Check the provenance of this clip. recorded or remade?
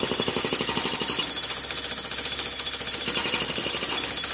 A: recorded